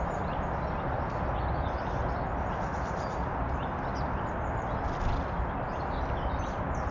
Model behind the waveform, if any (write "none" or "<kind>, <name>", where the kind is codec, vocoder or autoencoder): none